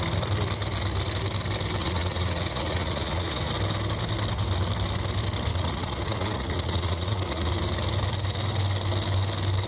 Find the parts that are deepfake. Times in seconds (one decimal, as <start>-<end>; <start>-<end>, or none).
1.8-3.5; 5.5-7.5